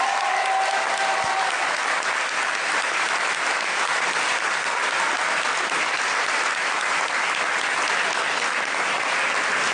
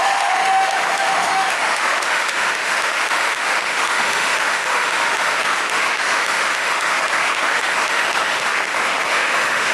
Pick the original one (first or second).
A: first